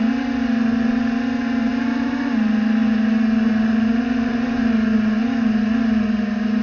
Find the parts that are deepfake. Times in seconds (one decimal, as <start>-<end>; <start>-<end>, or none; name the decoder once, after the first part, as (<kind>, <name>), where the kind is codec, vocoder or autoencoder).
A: none